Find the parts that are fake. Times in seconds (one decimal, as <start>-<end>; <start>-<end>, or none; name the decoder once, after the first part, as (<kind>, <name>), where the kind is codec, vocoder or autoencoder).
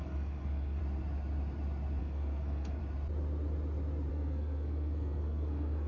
0.0-0.8 (codec, SNAC); 2.0-2.8; 4.1-5.9